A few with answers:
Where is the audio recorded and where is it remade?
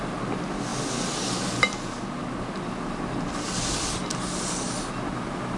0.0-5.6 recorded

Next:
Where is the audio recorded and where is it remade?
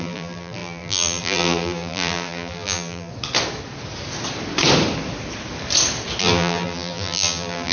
0.0-3.1 remade; 3.1-6.2 recorded; 6.2-7.7 remade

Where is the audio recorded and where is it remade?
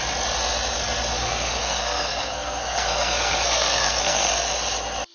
0.0-1.2 recorded; 1.2-4.3 remade; 4.3-5.1 recorded